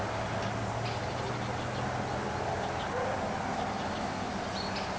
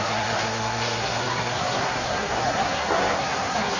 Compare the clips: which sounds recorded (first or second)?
first